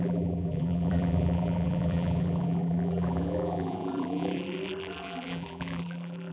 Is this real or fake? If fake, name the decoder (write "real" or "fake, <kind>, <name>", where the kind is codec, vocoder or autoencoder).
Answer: fake, vocoder, BigVGAN v2